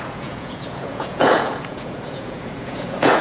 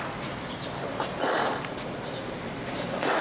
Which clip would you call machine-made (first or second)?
first